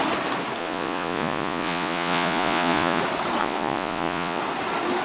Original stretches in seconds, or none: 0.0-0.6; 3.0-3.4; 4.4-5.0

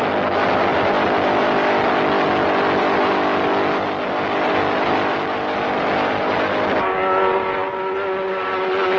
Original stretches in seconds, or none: 0.0-9.0

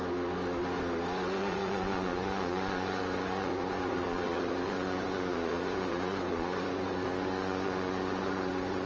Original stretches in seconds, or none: 0.0-1.4